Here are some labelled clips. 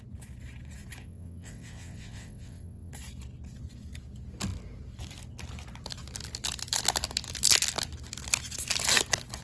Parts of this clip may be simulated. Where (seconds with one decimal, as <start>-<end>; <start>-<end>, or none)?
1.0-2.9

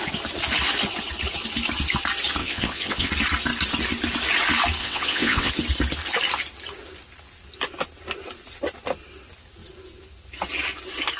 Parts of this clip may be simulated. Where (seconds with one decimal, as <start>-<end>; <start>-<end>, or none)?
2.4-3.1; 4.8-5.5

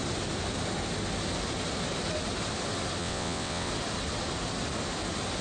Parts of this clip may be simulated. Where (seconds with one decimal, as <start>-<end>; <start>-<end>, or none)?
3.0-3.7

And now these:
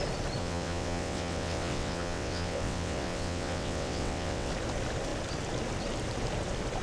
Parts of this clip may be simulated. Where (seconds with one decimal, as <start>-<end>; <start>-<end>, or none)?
0.4-4.5

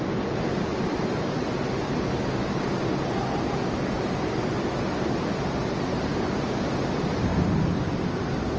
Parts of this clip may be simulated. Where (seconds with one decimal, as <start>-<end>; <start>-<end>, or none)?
none

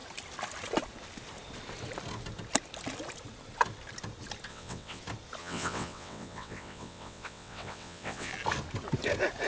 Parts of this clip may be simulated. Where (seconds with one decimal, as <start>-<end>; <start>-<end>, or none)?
4.5-5.0; 5.4-8.3

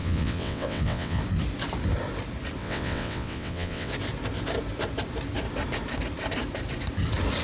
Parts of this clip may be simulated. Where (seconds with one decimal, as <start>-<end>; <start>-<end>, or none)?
0.0-1.2; 2.6-3.9